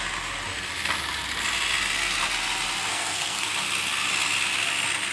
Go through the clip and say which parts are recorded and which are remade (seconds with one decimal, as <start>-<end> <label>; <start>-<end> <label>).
0.0-2.9 recorded; 2.9-3.5 remade; 3.5-5.1 recorded